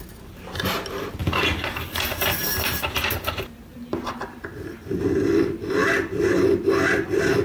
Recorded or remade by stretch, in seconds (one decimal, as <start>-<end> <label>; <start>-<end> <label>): 0.0-1.2 recorded; 1.2-4.1 remade; 4.1-7.4 recorded